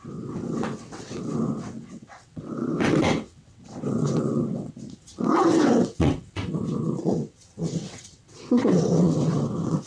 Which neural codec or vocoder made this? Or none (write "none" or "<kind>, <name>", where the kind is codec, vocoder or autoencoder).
vocoder, WaveNeXt